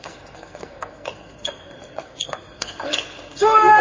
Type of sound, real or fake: fake